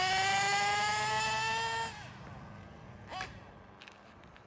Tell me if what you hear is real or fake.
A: real